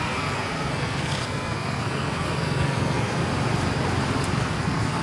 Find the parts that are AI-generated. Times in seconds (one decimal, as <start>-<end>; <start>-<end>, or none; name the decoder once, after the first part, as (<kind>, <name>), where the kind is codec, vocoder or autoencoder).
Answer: 0.0-3.2 (codec, SNAC); 4.3-5.0